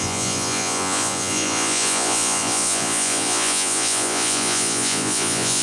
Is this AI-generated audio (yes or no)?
yes